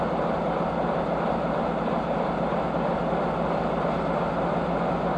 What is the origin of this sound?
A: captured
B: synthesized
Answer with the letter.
A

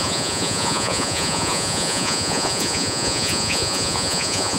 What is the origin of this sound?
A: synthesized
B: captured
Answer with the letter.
A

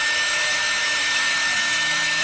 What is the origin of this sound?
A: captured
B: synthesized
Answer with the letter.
B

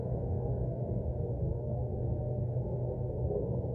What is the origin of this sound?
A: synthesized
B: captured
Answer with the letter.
A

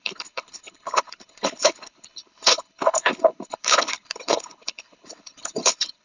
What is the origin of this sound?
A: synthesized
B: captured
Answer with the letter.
A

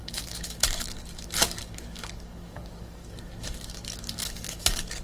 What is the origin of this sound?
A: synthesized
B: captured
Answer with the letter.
A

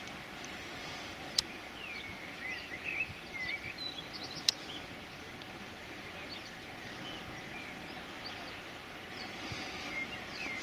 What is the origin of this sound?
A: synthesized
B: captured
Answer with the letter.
B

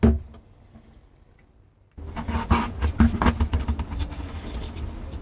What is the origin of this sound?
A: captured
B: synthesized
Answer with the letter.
A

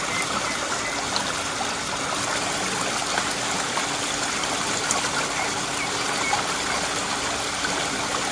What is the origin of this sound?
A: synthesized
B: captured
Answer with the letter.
B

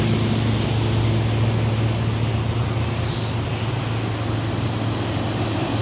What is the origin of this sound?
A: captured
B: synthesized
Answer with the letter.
A